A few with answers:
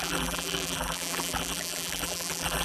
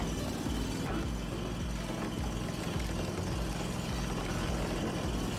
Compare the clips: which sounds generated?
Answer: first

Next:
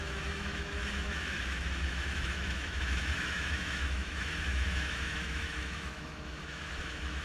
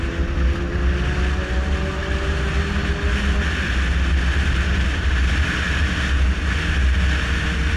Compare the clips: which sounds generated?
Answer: first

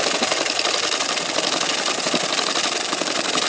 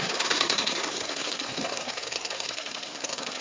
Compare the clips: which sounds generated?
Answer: second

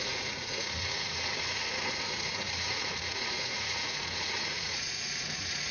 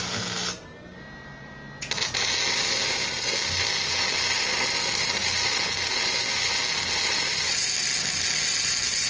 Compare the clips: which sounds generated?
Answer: first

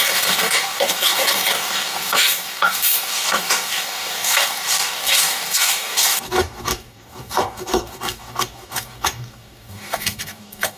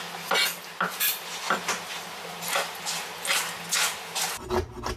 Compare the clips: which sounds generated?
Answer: first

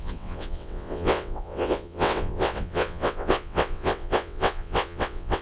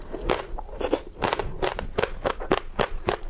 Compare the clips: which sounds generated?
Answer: first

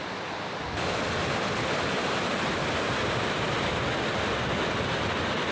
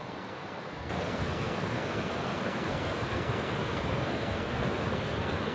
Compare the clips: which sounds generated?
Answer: second